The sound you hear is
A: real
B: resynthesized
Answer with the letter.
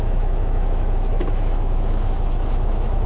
B